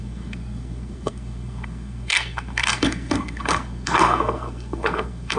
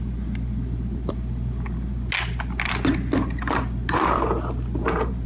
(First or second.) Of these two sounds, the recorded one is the second